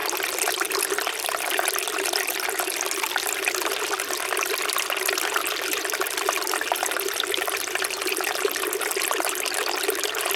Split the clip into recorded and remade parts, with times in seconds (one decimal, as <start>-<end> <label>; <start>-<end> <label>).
0.0-10.4 recorded